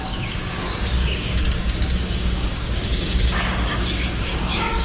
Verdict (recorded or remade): remade